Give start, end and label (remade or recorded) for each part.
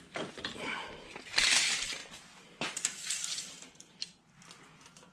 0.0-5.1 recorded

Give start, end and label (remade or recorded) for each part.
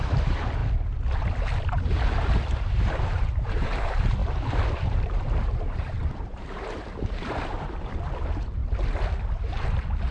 0.0-0.6 remade; 0.6-1.9 recorded; 1.9-8.6 remade; 8.6-9.6 recorded; 9.6-10.1 remade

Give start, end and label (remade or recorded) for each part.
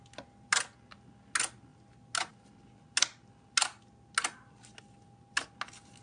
0.0-6.0 recorded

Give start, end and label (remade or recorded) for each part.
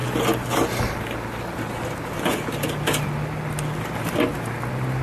0.0-5.0 recorded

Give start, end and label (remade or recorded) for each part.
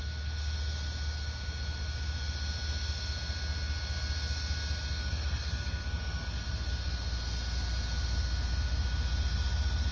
0.0-5.0 recorded; 5.0-6.7 remade; 6.7-9.9 recorded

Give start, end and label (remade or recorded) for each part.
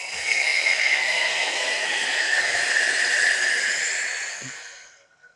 0.0-2.6 remade; 2.6-4.3 recorded; 4.3-5.4 remade